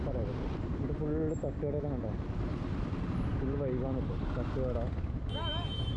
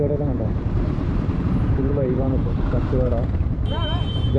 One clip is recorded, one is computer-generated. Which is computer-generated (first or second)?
second